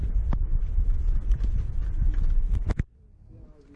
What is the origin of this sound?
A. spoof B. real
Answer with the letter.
B